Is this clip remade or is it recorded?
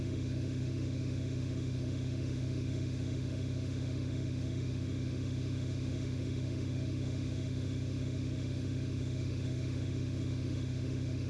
remade